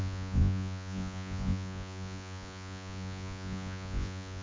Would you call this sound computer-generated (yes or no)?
yes